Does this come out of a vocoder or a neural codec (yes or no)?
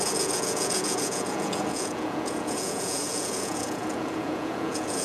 yes